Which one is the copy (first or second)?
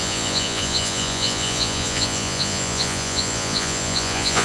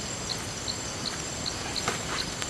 first